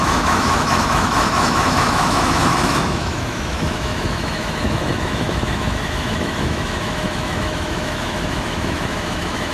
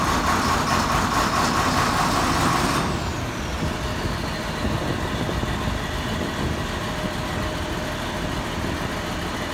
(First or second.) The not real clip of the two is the first